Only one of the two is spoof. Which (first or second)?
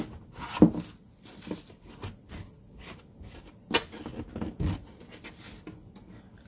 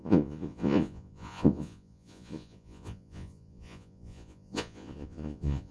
second